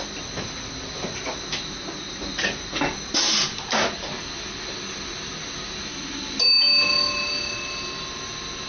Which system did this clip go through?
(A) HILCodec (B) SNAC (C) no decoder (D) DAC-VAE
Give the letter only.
C